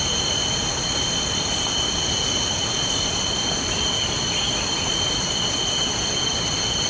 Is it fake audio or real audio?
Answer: real